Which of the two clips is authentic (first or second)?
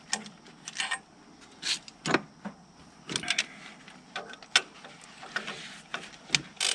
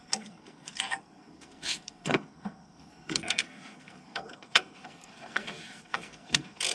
first